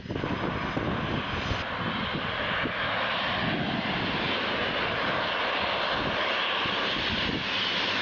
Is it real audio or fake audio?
real